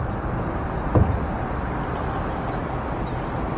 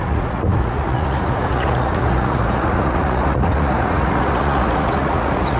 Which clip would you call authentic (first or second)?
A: first